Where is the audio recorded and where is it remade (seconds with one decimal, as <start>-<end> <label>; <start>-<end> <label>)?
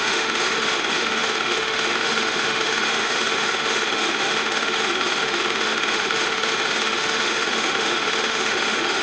0.0-9.0 remade